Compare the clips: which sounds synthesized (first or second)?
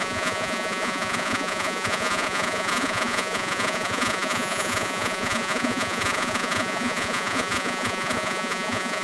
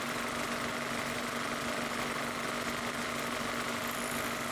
first